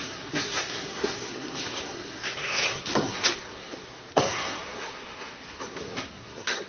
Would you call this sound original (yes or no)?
no